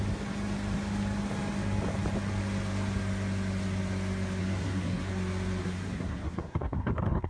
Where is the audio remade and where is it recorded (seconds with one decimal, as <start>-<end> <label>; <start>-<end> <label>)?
0.0-4.4 recorded; 4.4-5.1 remade; 5.1-5.6 recorded; 5.6-7.3 remade